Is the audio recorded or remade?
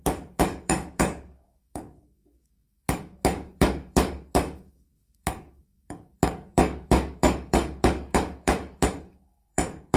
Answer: remade